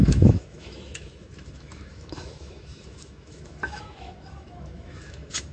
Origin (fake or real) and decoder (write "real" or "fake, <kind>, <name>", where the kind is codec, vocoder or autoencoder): fake, autoencoder, DAC-VAE